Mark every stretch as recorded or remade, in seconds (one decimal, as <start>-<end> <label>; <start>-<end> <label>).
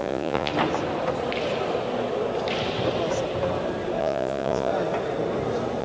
0.0-0.5 remade; 0.5-4.0 recorded; 4.0-4.7 remade; 4.7-5.8 recorded